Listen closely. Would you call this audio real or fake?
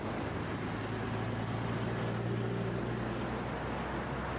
real